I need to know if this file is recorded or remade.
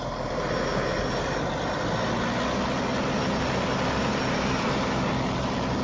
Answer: recorded